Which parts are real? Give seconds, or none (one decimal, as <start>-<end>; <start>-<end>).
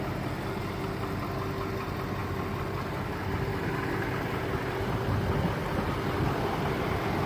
0.0-2.2; 3.1-5.6; 6.4-7.3